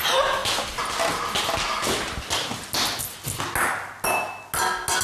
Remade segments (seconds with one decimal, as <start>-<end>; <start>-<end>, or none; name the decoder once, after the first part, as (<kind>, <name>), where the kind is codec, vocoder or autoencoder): none